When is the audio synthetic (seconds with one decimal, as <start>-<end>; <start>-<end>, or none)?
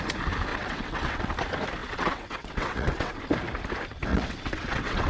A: 0.5-1.3; 1.8-3.1; 4.1-5.1